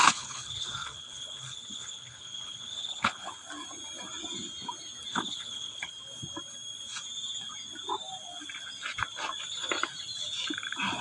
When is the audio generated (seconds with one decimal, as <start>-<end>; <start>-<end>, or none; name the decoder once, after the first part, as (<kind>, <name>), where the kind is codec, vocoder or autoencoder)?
0.0-3.3 (codec, HILCodec); 5.1-5.9